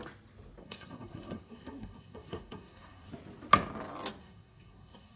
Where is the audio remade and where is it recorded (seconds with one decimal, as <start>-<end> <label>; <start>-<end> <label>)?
0.0-0.6 recorded; 0.6-3.1 remade; 3.1-4.2 recorded; 4.2-5.2 remade